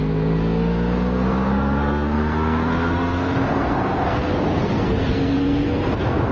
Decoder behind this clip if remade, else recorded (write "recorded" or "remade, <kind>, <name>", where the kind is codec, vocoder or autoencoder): remade, codec, SNAC